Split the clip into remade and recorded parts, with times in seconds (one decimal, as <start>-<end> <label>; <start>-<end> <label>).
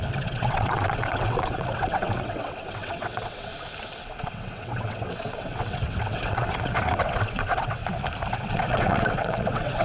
0.0-3.5 remade; 3.5-4.2 recorded; 4.2-7.8 remade; 7.8-8.3 recorded; 8.3-9.8 remade